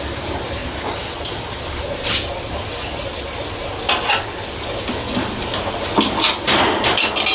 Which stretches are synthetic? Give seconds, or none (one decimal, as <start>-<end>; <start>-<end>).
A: none